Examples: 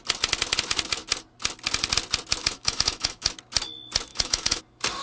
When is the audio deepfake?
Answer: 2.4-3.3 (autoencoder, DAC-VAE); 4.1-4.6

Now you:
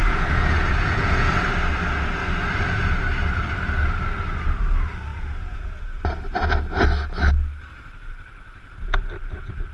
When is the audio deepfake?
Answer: 0.0-1.3 (vocoder, Vocos); 5.1-6.0